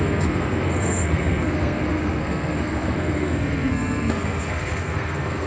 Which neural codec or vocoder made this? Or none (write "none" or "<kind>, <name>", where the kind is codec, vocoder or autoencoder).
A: codec, SNAC